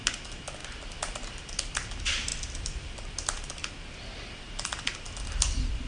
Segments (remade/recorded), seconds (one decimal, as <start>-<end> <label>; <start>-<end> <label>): 0.0-0.6 recorded; 0.6-1.5 remade; 1.5-2.3 recorded; 2.3-3.7 remade; 3.7-5.9 recorded